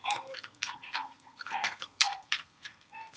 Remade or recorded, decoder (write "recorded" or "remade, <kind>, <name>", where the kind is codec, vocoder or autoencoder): remade, codec, SNAC